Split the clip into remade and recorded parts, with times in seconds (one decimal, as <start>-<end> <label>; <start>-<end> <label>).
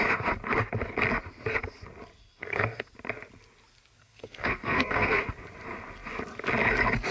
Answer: 0.0-2.2 recorded; 2.2-2.9 remade; 2.9-4.0 recorded; 4.0-5.2 remade; 5.2-7.1 recorded